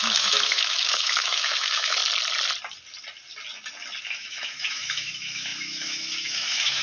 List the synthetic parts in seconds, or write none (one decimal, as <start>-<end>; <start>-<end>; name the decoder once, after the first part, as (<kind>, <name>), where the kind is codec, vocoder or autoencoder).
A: 0.0-2.0 (autoencoder, DAC-VAE); 4.0-6.8